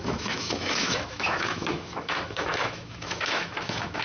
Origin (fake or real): fake